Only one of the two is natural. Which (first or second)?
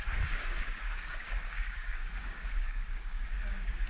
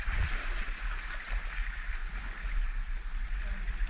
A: second